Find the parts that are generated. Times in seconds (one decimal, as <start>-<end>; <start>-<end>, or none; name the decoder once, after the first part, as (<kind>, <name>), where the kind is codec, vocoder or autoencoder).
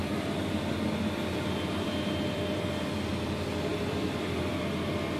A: 0.0-3.1 (vocoder, BigVGAN v2); 3.7-4.3